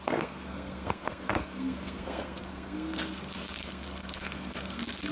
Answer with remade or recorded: remade